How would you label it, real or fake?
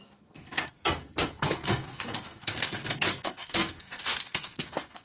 fake